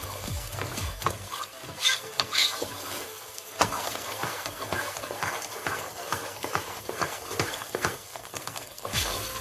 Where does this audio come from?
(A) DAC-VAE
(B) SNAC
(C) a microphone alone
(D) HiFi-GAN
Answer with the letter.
B